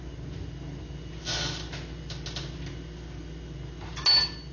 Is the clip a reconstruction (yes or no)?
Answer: no